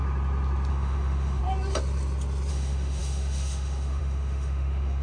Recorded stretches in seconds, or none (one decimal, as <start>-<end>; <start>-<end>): 0.0-0.7; 1.4-2.5